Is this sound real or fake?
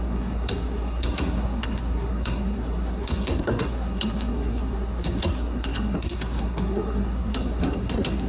fake